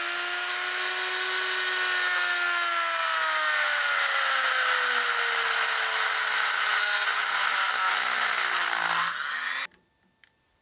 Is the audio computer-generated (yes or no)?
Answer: no